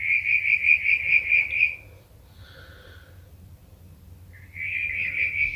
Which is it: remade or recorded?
recorded